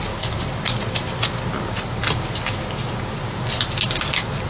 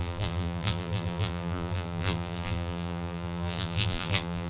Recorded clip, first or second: first